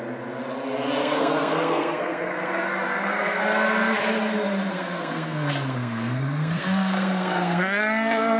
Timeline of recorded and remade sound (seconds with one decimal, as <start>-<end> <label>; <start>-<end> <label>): 0.0-1.0 recorded; 1.0-3.4 remade; 3.4-4.7 recorded; 4.7-7.8 remade; 7.8-8.4 recorded